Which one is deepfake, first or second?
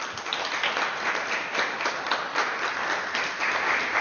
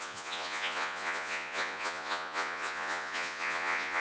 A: second